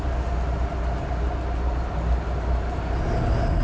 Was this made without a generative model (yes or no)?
yes